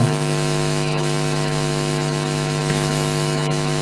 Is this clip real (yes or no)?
no